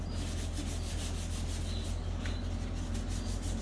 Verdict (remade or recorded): recorded